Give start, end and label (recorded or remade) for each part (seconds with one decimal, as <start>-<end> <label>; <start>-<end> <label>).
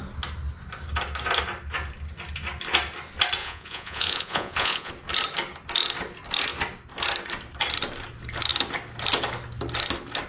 0.0-3.4 recorded; 3.4-4.9 remade; 4.9-10.3 recorded